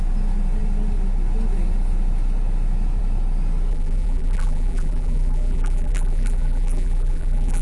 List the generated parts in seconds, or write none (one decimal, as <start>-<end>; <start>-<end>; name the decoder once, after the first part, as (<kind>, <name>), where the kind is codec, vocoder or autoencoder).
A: 3.7-7.6 (vocoder, BigVGAN v2)